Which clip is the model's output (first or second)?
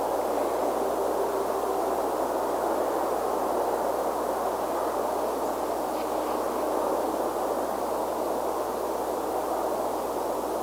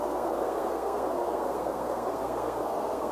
second